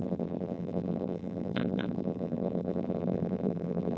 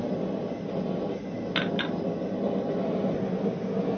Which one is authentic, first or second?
second